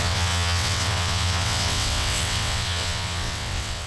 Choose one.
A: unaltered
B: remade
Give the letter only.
B